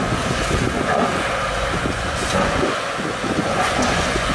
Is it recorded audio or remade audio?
remade